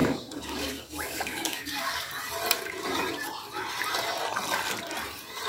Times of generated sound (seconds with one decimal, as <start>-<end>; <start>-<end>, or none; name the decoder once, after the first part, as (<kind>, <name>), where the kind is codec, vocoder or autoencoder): 0.0-2.1 (codec, DAC)